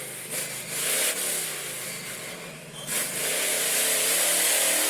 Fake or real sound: real